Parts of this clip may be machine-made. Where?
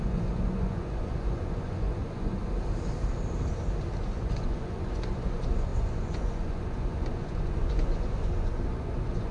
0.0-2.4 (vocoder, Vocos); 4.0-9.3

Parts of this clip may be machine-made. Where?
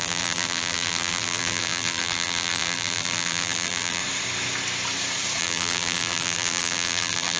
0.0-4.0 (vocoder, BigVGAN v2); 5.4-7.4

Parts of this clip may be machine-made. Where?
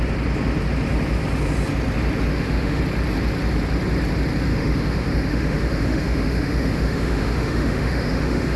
2.3-2.8 (autoencoder, DAC-VAE); 4.5-8.6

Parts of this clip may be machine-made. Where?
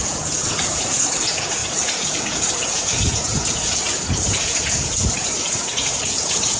0.0-6.6 (vocoder, Vocos)